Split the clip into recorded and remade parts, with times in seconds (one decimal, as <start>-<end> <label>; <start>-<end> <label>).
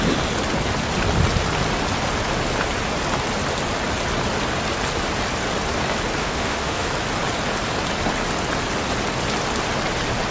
0.0-6.2 recorded; 6.2-6.9 remade; 6.9-10.3 recorded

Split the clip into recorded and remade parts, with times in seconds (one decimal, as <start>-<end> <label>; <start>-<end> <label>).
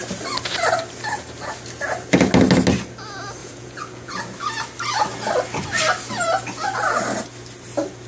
0.0-3.4 recorded; 3.4-4.2 remade; 4.2-8.1 recorded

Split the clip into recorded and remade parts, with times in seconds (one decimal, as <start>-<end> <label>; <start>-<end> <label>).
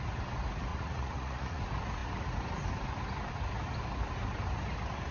0.0-0.7 recorded; 0.7-1.6 remade; 1.6-5.1 recorded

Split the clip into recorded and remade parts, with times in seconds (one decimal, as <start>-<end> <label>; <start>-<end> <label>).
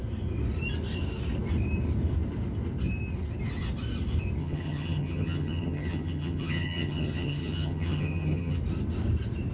0.0-4.4 recorded; 4.4-8.6 remade; 8.6-9.5 recorded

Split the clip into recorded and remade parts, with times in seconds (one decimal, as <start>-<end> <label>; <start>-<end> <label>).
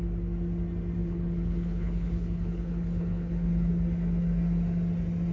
0.0-1.0 recorded; 1.0-3.7 remade; 3.7-5.3 recorded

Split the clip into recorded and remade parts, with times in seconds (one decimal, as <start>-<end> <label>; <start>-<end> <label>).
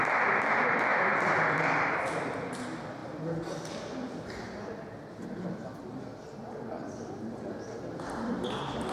0.0-8.9 recorded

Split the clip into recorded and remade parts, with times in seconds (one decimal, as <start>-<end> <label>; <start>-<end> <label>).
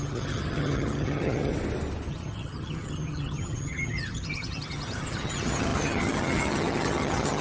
0.0-1.5 remade; 1.5-2.1 recorded; 2.1-7.4 remade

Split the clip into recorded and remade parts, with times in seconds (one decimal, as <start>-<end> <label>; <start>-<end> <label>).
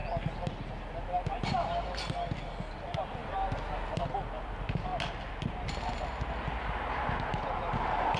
0.0-8.2 recorded